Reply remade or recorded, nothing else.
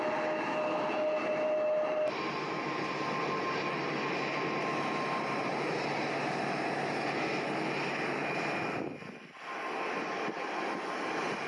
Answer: recorded